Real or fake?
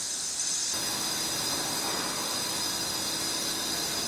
real